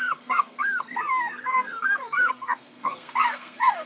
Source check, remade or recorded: remade